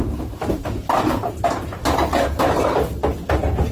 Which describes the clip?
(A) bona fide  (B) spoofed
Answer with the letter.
A